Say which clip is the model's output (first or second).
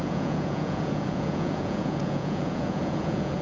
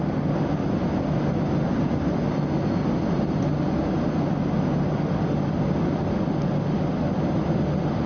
first